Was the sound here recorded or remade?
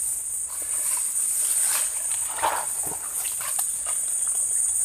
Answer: recorded